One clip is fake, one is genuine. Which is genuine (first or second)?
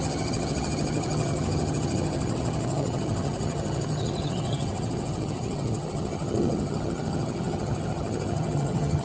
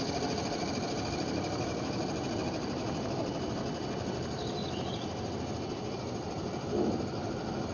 second